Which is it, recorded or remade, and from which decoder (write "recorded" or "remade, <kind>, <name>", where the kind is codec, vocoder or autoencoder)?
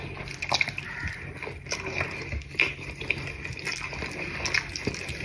recorded